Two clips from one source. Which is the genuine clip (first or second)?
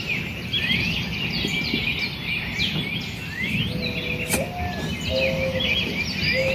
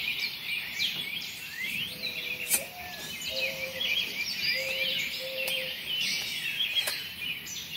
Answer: first